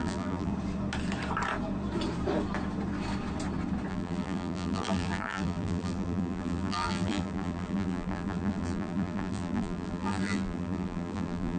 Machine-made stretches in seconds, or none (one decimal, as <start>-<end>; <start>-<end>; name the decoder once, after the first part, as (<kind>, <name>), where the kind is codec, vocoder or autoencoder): 0.0-0.5 (vocoder, BigVGAN v2); 3.9-11.6